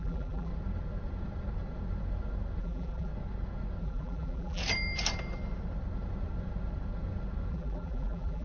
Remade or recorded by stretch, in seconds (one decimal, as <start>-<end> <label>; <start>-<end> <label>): 0.0-0.5 remade; 0.5-2.6 recorded; 2.6-3.1 remade; 3.1-3.8 recorded; 3.8-4.6 remade; 4.6-7.5 recorded; 7.5-8.4 remade